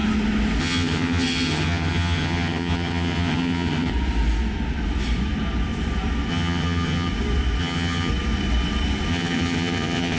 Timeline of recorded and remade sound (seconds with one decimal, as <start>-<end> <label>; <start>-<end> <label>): 0.0-0.6 recorded; 0.6-3.9 remade; 3.9-6.3 recorded; 6.3-7.1 remade; 7.1-7.6 recorded; 7.6-8.1 remade; 8.1-9.1 recorded; 9.1-10.2 remade

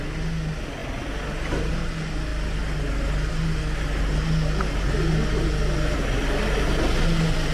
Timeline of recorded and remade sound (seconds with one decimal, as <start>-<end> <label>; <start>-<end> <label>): 0.0-7.5 recorded

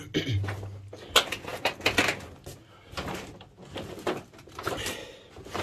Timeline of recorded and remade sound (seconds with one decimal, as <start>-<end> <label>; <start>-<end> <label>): 0.0-5.6 recorded

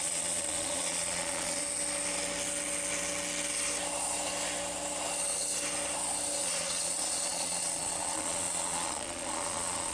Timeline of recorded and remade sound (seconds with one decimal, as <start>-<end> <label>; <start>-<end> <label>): 0.0-1.6 remade; 1.6-6.4 recorded; 6.4-9.9 remade